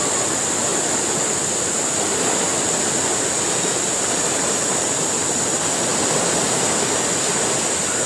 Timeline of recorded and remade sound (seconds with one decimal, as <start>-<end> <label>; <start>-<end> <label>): 0.0-2.5 recorded; 2.5-5.1 remade; 5.1-8.1 recorded